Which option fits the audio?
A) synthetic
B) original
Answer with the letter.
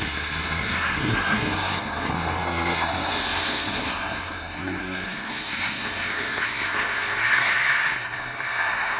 A